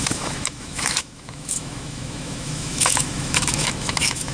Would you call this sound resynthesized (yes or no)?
yes